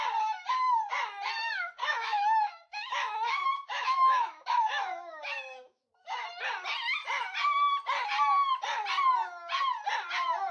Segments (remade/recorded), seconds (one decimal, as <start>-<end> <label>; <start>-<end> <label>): 0.0-1.8 recorded; 1.8-6.3 remade; 6.3-10.5 recorded